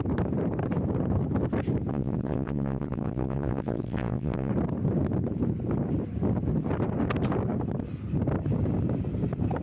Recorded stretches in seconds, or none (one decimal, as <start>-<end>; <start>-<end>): 0.0-1.9; 4.5-9.6